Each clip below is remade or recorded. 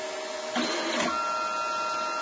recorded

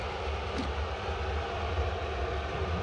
recorded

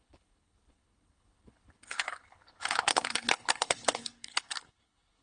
remade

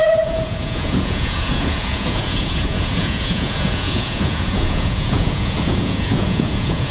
remade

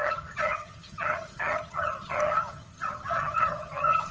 remade